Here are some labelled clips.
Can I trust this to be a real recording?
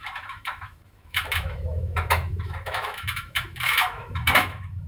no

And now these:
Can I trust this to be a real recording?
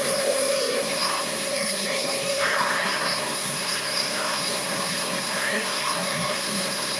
no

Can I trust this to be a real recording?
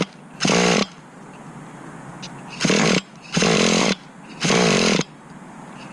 yes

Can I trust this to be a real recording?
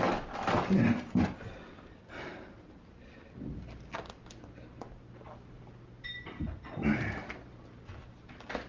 yes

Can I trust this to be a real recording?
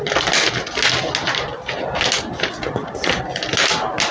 yes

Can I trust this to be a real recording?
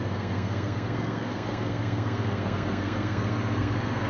no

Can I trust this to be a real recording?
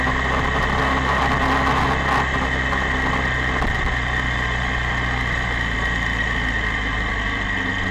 yes